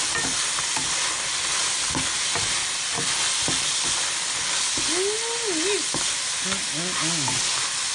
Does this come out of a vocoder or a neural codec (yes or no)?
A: no